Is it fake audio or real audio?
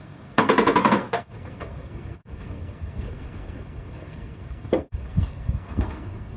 fake